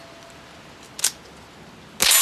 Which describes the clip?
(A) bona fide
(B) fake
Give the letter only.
A